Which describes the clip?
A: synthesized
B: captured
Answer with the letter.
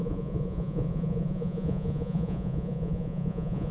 A